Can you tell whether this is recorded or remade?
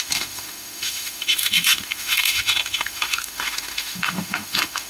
remade